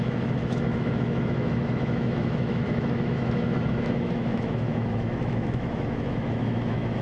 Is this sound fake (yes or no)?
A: yes